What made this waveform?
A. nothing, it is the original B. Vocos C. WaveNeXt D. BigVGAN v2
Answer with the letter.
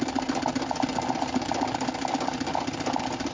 A